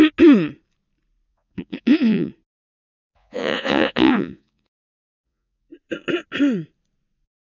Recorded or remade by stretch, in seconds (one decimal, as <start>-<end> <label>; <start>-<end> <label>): 0.0-1.3 recorded; 1.3-2.3 remade; 2.3-3.1 recorded; 3.1-5.7 remade; 5.7-7.5 recorded